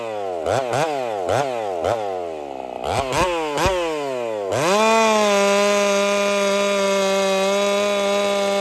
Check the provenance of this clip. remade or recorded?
recorded